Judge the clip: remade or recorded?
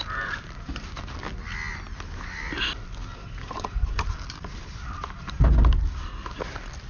recorded